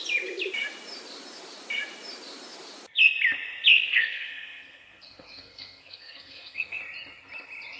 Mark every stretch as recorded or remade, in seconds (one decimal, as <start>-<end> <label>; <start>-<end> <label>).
0.0-3.7 recorded; 3.7-6.8 remade; 6.8-7.8 recorded